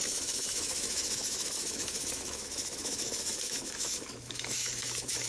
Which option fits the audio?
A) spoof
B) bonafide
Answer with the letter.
A